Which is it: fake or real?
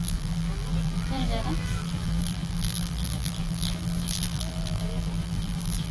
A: fake